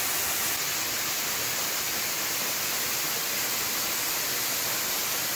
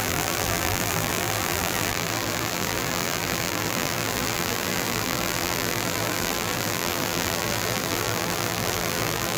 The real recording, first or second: first